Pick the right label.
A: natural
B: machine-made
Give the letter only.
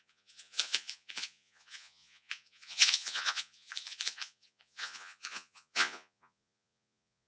B